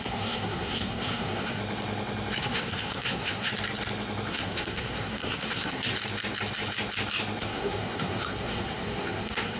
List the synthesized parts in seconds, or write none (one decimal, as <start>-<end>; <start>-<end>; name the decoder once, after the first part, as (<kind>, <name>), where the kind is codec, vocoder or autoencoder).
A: 0.0-1.6 (codec, SNAC); 2.4-3.5; 4.3-5.9; 7.4-9.6